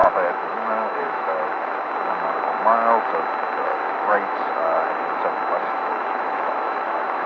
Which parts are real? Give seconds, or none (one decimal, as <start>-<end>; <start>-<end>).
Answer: 1.9-3.7; 4.5-5.6